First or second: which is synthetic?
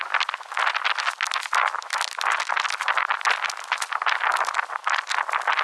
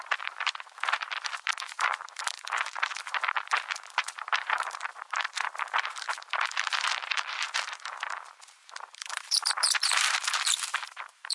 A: second